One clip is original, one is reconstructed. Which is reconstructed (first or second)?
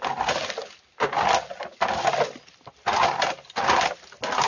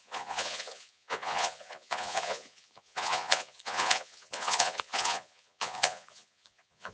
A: second